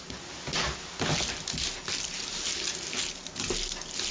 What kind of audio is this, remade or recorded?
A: recorded